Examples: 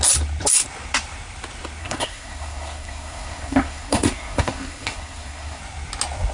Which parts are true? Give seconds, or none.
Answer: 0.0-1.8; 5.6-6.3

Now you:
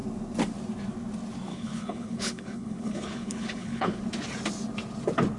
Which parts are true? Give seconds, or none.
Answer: 0.0-1.5; 4.0-5.4

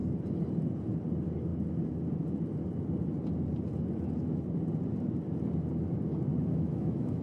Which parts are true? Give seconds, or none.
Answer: 0.0-6.3